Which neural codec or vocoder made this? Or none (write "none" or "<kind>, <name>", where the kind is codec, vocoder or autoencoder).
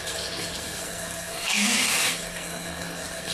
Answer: codec, SNAC